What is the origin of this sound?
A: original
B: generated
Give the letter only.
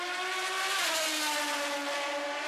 A